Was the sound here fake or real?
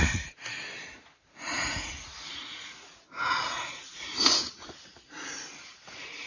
fake